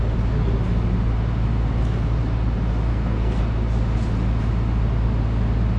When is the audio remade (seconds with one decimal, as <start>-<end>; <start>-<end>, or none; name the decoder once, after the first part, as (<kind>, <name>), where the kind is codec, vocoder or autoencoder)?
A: 2.9-3.4 (codec, SNAC)